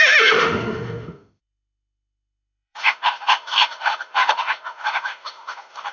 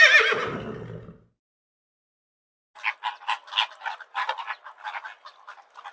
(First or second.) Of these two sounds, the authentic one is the second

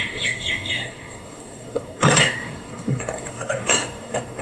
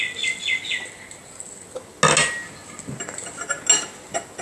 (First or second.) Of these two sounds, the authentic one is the second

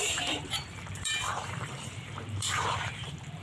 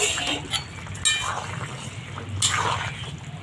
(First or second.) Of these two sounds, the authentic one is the second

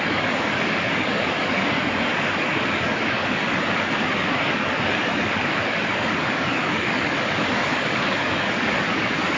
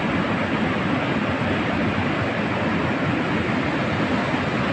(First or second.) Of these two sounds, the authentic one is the second